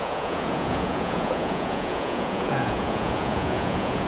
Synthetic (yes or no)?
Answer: yes